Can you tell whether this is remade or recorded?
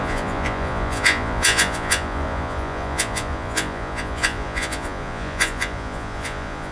remade